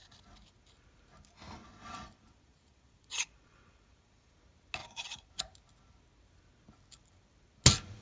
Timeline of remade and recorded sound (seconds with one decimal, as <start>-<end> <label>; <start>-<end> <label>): 0.0-1.6 recorded; 1.6-4.3 remade; 4.3-4.8 recorded; 4.8-5.3 remade; 5.3-8.0 recorded